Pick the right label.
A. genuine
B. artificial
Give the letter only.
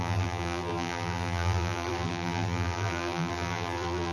B